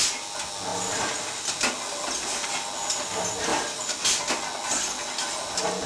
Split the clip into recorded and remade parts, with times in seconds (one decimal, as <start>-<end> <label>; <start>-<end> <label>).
0.0-3.5 recorded; 3.5-4.3 remade; 4.3-5.9 recorded